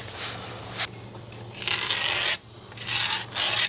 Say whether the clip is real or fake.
real